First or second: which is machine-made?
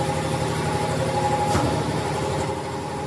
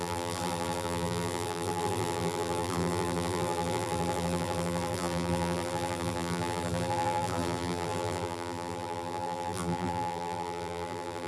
second